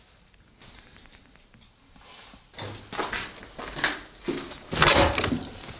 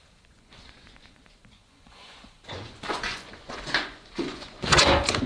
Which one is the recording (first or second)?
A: first